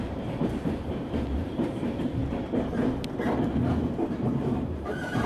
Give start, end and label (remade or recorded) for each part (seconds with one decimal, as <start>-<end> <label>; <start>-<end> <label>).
0.0-2.2 remade; 2.2-4.0 recorded; 4.0-5.3 remade